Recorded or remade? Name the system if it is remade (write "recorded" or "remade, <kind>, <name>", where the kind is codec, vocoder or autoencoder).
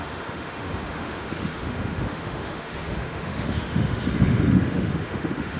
remade, autoencoder, DAC-VAE